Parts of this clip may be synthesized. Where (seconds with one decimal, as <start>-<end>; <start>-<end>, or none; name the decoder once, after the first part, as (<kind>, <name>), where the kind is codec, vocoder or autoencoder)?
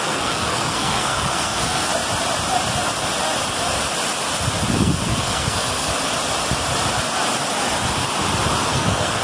0.0-1.9 (codec, SNAC); 4.7-5.9; 8.7-9.2